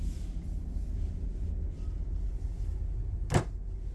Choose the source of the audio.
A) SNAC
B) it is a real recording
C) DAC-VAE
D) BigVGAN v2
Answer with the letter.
B